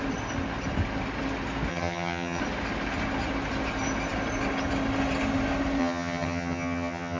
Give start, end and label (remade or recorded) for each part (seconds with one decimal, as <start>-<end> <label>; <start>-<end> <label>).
0.0-1.7 recorded; 1.7-2.4 remade; 2.4-5.8 recorded; 5.8-7.2 remade